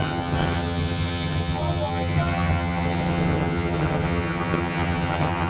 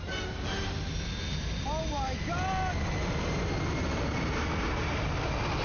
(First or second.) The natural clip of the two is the second